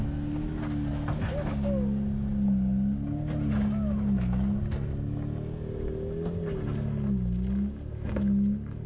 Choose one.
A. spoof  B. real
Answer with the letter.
B